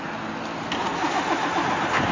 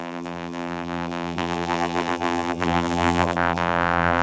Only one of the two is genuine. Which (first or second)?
first